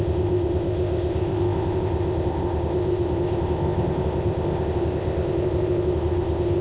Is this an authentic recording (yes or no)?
no